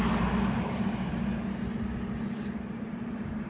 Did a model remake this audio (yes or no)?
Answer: no